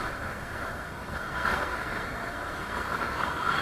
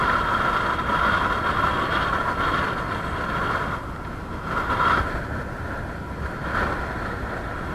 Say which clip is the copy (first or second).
first